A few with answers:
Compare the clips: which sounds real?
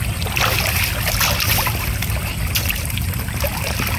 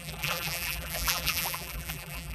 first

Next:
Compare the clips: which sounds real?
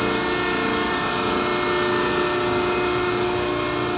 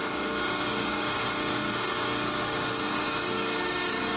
first